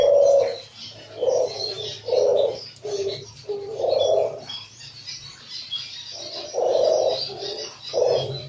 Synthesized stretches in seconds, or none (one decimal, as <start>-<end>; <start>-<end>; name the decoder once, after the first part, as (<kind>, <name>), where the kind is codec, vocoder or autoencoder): 2.3-5.1 (vocoder, BigVGAN v2)